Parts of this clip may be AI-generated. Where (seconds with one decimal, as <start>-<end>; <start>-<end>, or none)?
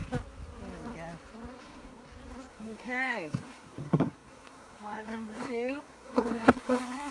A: 1.6-2.0; 2.5-7.1